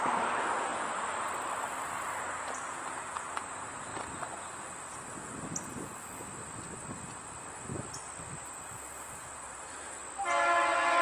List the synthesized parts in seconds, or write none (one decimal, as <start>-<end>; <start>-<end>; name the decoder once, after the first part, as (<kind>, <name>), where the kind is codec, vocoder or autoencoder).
0.0-0.7 (vocoder, BigVGAN v2); 1.7-3.9; 9.1-10.0